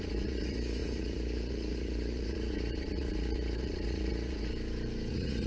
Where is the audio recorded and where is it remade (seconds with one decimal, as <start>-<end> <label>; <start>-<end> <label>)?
0.0-4.5 remade; 4.5-5.1 recorded; 5.1-5.5 remade